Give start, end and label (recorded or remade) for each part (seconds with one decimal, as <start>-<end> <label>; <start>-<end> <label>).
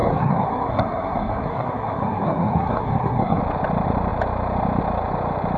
0.0-3.4 remade; 3.4-5.6 recorded